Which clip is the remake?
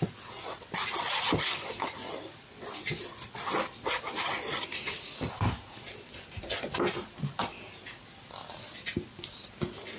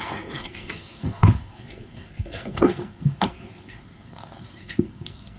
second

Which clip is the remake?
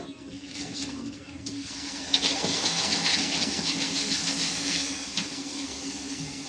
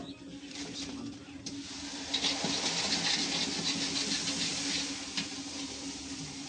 first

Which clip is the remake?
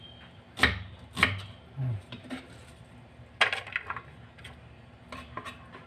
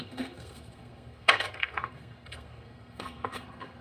second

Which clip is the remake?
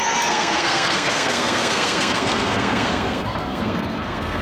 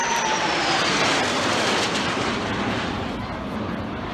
first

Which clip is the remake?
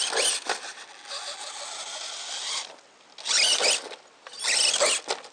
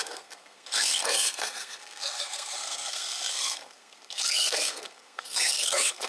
second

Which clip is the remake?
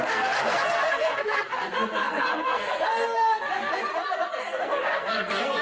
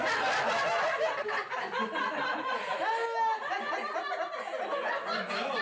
first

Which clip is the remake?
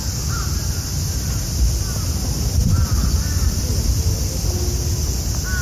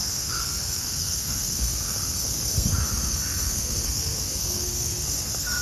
second